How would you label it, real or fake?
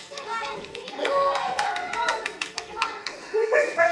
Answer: fake